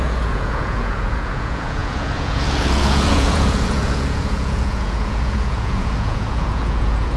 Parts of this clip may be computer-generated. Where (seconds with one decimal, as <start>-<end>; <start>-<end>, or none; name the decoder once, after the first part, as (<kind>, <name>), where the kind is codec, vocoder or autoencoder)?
0.0-7.2 (vocoder, Vocos)